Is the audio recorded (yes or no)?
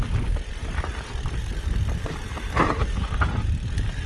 yes